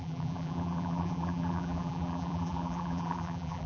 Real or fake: fake